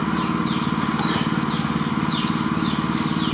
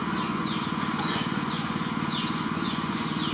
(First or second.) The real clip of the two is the first